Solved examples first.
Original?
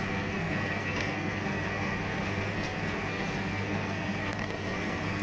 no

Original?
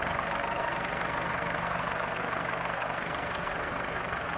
no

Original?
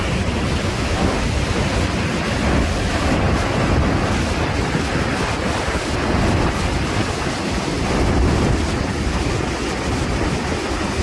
yes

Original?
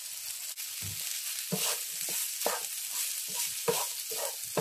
yes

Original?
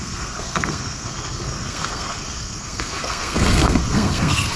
no